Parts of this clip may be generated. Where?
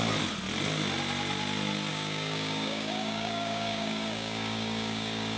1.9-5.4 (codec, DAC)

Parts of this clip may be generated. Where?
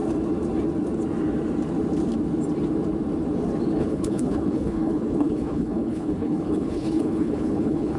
3.8-8.0 (codec, HILCodec)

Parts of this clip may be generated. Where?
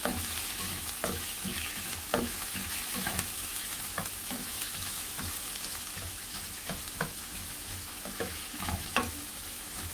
0.0-9.9 (autoencoder, DAC-VAE)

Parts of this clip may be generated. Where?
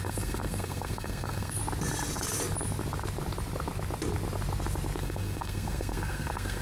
0.0-1.6 (codec, SNAC); 5.0-6.6